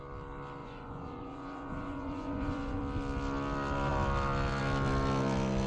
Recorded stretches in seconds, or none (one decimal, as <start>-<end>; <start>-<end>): 0.0-0.6; 2.8-5.7